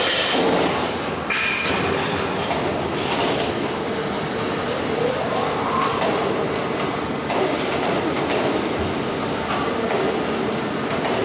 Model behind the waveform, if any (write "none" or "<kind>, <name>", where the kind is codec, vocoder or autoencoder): none